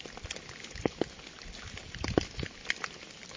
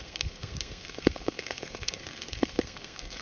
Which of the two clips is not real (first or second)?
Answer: second